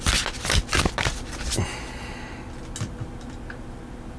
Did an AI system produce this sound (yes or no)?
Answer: no